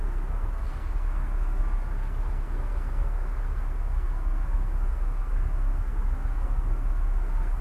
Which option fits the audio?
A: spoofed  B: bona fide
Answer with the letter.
A